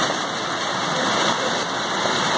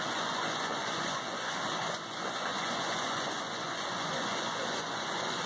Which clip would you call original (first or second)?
first